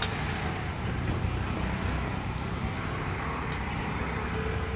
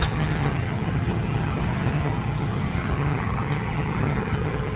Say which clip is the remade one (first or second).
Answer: second